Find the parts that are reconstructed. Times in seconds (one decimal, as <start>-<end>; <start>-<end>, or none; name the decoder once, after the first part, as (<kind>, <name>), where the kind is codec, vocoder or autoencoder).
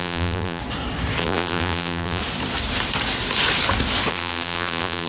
0.0-0.6 (vocoder, BigVGAN v2); 1.2-2.2; 4.1-5.1